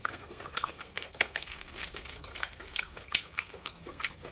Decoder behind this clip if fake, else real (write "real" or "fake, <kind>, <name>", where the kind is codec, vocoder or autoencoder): fake, codec, SNAC